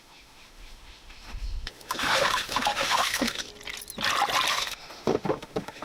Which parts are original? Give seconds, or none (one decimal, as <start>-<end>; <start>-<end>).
3.5-4.5